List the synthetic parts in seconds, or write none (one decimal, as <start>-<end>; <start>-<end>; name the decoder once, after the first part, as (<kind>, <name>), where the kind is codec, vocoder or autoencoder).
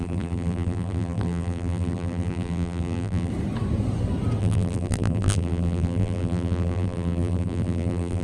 0.0-3.3 (vocoder, BigVGAN v2); 4.4-8.2